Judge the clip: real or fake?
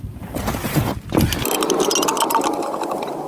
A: real